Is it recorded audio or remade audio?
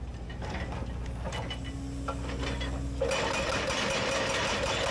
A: recorded